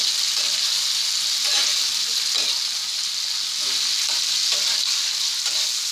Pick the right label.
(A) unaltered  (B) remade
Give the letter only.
A